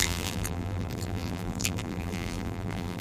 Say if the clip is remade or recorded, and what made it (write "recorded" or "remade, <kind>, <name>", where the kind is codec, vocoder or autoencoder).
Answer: remade, vocoder, BigVGAN v2